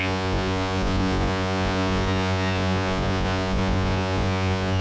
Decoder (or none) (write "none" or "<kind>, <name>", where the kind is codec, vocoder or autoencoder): vocoder, Vocos